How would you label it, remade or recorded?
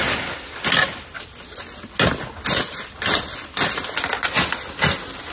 recorded